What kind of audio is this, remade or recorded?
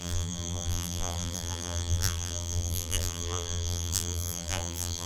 remade